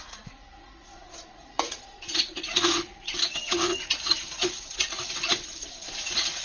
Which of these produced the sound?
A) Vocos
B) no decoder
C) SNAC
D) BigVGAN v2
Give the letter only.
A